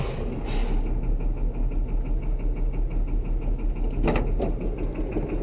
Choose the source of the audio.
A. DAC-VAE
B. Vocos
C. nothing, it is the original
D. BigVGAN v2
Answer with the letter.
C